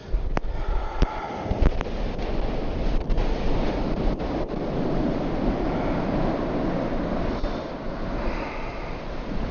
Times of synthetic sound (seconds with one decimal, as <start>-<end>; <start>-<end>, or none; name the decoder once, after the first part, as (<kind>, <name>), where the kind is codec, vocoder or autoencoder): none